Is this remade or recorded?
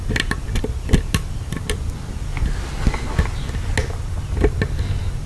recorded